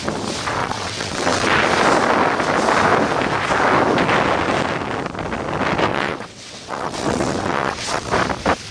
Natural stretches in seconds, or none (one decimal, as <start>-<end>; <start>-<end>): 0.0-0.6; 1.5-5.9; 8.1-8.7